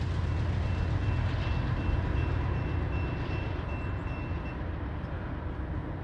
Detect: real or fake real